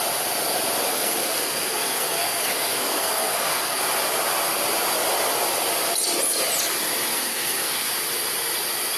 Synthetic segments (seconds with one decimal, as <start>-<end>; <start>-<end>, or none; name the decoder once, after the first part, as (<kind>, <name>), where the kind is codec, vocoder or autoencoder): 0.9-3.8 (codec, SNAC); 7.1-7.9

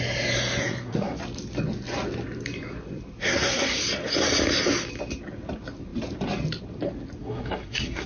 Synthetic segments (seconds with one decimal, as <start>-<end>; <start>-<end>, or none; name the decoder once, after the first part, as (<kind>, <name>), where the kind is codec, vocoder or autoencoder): 0.6-1.2 (codec, SNAC); 3.2-3.8; 7.2-8.1

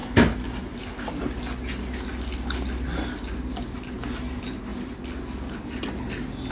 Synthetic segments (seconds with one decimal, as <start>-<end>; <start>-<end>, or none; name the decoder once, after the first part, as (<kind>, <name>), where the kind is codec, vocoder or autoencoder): none

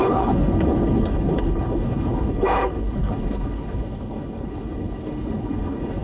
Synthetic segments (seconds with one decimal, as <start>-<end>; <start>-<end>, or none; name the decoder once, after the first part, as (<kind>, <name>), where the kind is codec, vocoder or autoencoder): 0.0-6.0 (codec, HILCodec)

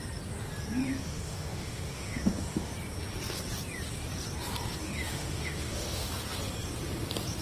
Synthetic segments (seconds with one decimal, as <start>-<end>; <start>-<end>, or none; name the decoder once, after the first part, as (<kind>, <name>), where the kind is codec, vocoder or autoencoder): 0.8-2.7 (autoencoder, DAC-VAE); 4.8-6.1

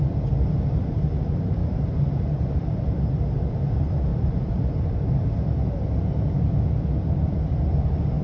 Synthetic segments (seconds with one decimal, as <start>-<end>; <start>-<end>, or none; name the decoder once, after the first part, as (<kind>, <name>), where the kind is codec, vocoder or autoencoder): 1.6-2.8 (vocoder, BigVGAN v2); 4.1-5.1

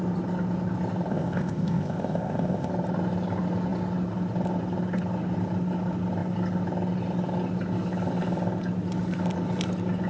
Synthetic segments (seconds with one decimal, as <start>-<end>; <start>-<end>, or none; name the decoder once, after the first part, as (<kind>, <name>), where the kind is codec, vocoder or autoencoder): 1.1-2.7 (codec, ZipCodec)

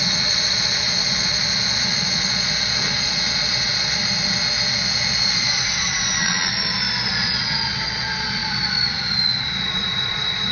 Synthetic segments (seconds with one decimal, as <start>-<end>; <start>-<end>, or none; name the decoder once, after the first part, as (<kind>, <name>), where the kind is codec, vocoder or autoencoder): 0.0-4.0 (vocoder, Vocos); 4.7-6.5; 7.1-10.5